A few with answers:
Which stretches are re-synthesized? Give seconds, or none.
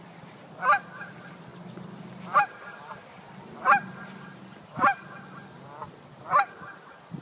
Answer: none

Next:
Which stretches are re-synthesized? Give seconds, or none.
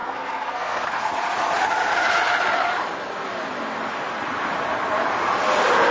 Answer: 0.0-1.1 (codec, SNAC)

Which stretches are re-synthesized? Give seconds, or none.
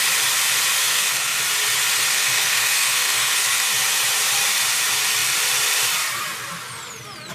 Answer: 0.8-1.4 (codec, SNAC); 2.1-3.7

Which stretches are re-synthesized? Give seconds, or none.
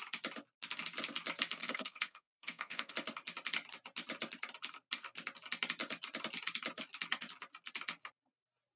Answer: 1.6-2.9 (codec, SNAC)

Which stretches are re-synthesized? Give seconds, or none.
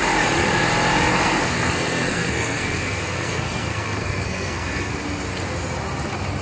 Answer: 1.1-4.9 (codec, SNAC)